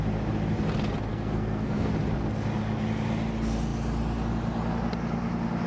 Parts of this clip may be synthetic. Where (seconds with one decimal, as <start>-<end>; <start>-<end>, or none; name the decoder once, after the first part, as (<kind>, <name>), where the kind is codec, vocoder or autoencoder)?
1.1-1.9 (codec, SNAC)